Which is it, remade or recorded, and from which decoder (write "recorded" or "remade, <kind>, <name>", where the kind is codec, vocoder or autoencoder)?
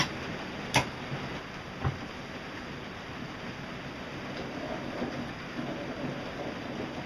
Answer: recorded